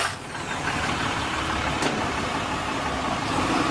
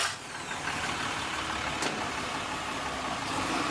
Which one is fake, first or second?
first